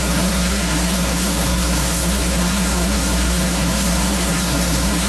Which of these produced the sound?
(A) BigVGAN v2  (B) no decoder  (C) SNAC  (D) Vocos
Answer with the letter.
C